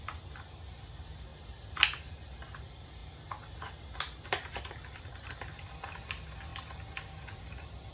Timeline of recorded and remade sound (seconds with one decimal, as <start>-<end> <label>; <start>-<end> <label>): 0.0-6.5 recorded; 6.5-7.9 remade